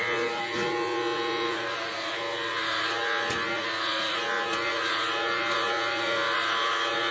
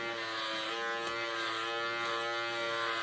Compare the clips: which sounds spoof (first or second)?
first